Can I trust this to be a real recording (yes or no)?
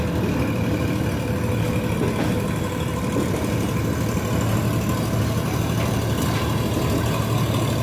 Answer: yes